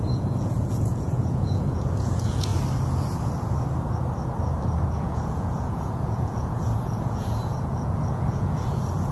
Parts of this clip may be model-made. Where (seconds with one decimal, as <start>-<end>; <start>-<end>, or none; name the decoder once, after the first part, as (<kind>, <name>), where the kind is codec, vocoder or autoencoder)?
0.0-2.5 (vocoder, Vocos); 4.9-9.1